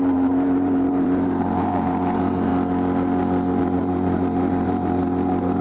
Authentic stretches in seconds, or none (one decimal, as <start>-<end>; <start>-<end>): 2.5-3.6